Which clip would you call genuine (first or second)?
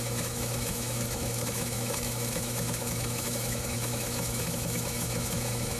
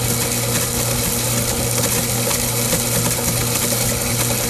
second